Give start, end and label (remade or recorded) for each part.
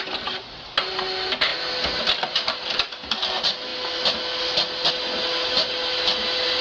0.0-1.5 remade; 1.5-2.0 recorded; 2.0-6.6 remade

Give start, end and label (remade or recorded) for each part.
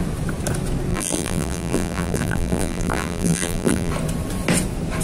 0.0-0.9 recorded; 0.9-3.9 remade; 3.9-5.0 recorded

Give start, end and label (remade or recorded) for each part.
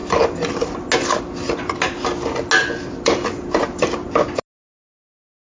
0.0-2.6 recorded; 2.6-4.4 remade; 4.4-5.5 recorded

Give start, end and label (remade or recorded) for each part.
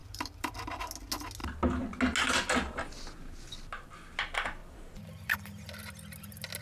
0.0-0.9 remade; 0.9-4.6 recorded; 4.6-5.7 remade; 5.7-6.6 recorded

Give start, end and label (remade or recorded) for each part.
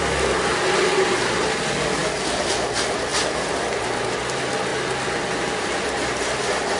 0.0-6.8 recorded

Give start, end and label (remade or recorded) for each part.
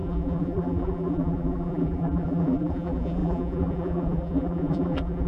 0.0-5.3 remade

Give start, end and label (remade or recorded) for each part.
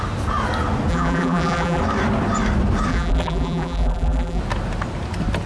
0.0-0.9 recorded; 0.9-1.8 remade; 1.8-2.9 recorded; 2.9-4.4 remade; 4.4-5.5 recorded